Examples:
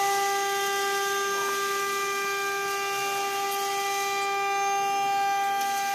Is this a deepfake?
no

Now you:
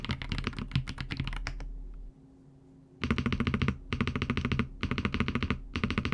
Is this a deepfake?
no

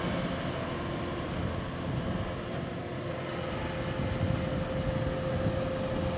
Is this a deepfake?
no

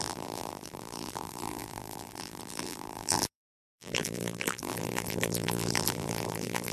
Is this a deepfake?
yes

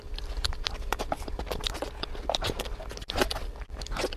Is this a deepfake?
no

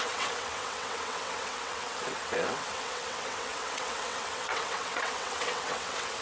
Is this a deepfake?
yes